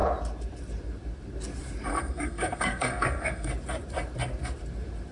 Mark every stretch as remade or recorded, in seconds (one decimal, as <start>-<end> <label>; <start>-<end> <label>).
0.0-1.9 recorded; 1.9-3.5 remade; 3.5-5.1 recorded